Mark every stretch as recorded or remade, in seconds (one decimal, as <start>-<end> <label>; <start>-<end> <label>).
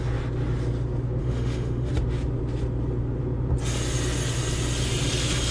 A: 0.0-1.2 recorded; 1.2-1.9 remade; 1.9-5.5 recorded